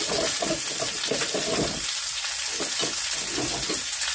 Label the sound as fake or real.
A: real